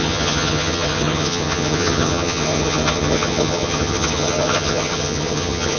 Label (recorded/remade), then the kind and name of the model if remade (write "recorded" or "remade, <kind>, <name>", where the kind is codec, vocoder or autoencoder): remade, vocoder, HiFi-GAN